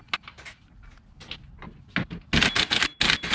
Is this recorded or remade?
recorded